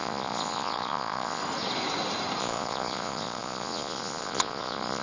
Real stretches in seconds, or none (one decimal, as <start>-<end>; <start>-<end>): 1.4-2.4